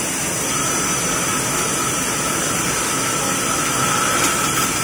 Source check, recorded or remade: recorded